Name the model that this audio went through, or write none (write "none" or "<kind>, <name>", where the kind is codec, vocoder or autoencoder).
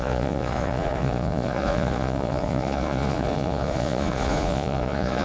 vocoder, Vocos